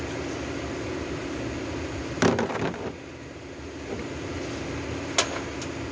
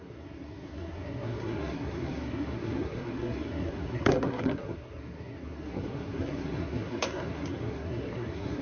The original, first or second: first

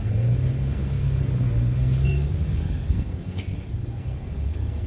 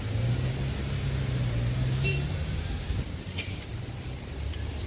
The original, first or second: second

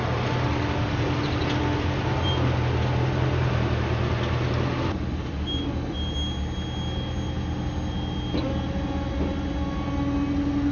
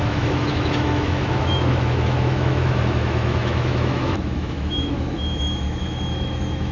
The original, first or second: first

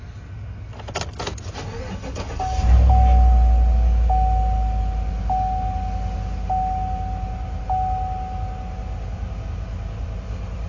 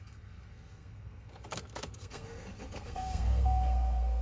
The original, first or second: first